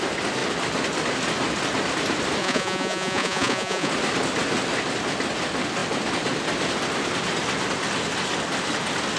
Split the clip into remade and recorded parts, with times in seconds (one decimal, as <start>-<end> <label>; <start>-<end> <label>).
0.0-2.4 recorded; 2.4-3.9 remade; 3.9-9.2 recorded